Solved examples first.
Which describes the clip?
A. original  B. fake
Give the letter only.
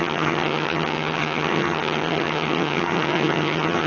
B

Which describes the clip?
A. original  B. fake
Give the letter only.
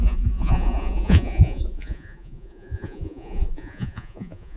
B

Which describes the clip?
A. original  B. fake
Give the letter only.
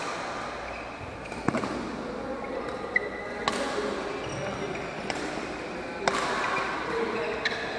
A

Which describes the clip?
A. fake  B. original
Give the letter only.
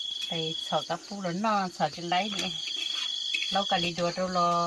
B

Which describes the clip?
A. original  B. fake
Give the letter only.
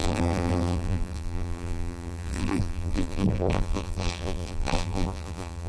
B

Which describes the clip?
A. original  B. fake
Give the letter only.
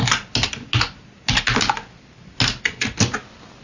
A